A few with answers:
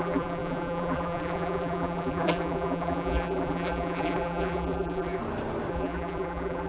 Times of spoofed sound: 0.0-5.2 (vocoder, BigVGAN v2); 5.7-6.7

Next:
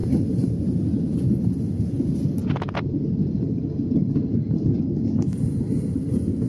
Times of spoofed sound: none